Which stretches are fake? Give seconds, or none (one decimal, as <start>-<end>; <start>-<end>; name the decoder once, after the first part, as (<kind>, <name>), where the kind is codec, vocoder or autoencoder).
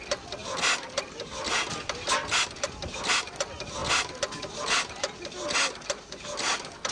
none